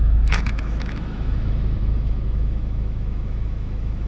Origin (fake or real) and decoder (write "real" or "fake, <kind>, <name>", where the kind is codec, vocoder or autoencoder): fake, autoencoder, DAC-VAE